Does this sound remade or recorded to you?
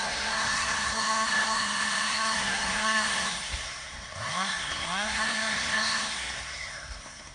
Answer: remade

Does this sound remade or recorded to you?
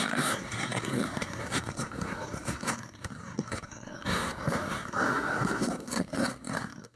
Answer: remade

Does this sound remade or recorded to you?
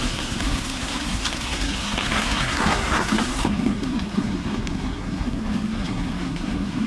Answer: remade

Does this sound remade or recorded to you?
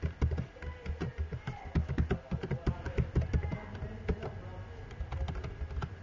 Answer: recorded